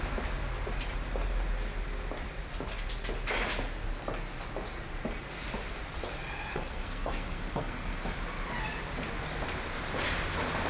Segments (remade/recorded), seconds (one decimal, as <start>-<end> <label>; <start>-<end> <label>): 0.0-6.5 recorded; 6.5-8.1 remade; 8.1-10.7 recorded